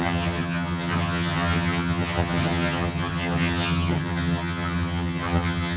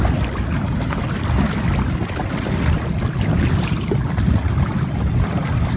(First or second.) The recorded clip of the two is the second